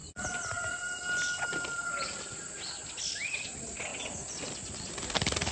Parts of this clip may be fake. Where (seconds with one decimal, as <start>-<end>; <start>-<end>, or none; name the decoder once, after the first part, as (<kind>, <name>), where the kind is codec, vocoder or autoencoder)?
none